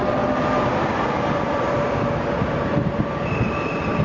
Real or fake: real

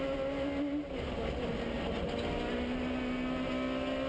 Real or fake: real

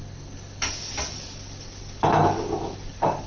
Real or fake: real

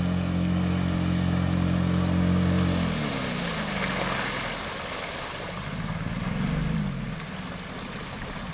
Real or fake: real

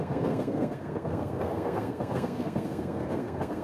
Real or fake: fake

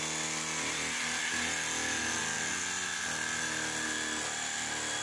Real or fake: real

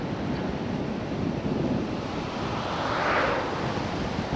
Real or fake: real